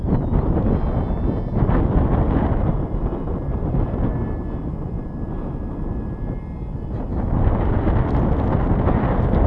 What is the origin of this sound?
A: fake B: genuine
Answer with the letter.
B